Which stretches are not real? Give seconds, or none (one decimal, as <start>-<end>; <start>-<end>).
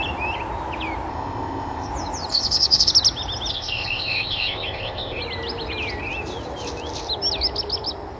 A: 1.1-1.9; 2.3-2.9; 3.5-5.2